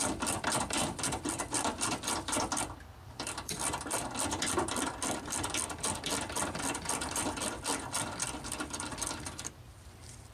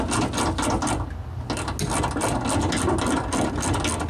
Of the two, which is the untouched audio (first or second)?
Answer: second